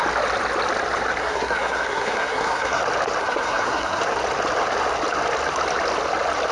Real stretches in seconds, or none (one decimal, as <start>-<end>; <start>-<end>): 0.0-1.2; 2.8-3.2; 4.0-6.5